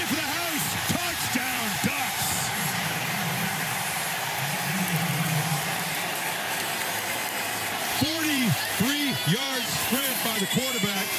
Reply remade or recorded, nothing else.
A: remade